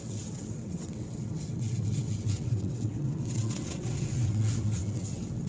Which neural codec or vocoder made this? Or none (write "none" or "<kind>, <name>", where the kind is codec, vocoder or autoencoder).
vocoder, WaveNeXt